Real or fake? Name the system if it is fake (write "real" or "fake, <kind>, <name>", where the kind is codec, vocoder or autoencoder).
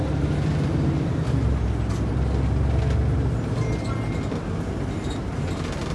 real